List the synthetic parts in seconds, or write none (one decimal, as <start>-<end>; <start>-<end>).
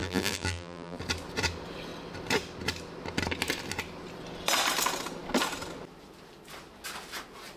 0.0-1.0